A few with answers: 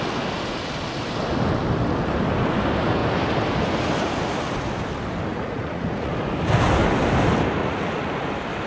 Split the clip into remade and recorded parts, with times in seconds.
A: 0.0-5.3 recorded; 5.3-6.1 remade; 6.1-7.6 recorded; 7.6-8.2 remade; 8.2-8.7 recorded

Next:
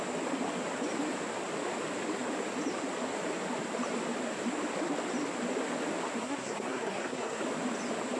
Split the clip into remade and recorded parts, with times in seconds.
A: 0.0-6.2 recorded; 6.2-7.4 remade; 7.4-8.2 recorded